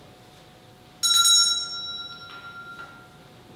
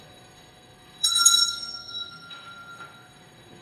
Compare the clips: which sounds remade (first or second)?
second